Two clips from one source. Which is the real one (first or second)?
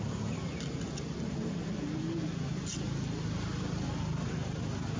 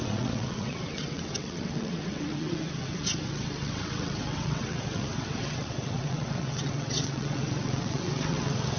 first